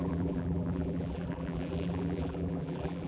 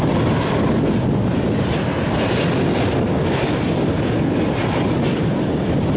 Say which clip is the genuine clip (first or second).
second